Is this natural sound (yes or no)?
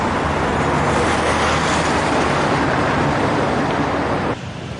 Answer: no